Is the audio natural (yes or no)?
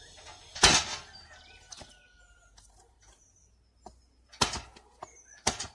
yes